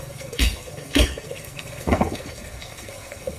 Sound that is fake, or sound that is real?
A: fake